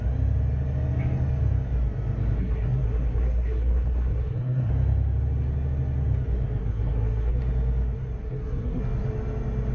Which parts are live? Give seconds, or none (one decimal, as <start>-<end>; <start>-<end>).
0.0-2.4; 4.7-6.6; 7.4-8.2; 8.8-9.7